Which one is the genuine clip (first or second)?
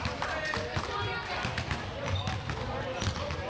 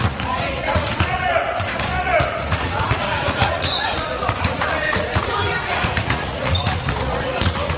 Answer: first